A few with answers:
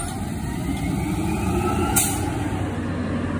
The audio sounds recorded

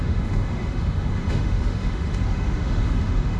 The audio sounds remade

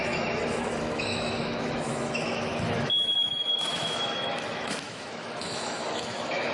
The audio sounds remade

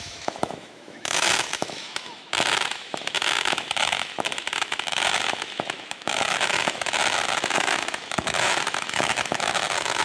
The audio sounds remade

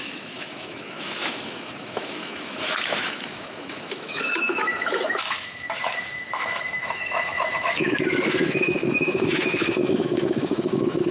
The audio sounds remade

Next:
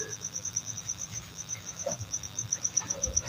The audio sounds remade